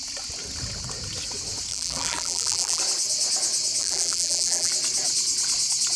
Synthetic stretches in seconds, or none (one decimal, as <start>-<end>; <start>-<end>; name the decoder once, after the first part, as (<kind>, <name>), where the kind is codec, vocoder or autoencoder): 1.7-2.8 (vocoder, BigVGAN v2); 3.8-4.7